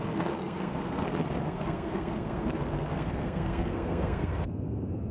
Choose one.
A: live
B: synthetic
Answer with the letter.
B